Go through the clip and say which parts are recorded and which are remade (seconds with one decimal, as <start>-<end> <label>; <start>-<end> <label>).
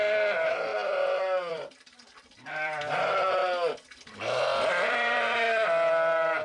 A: 0.0-0.7 remade; 0.7-1.4 recorded; 1.4-3.4 remade; 3.4-4.9 recorded; 4.9-6.4 remade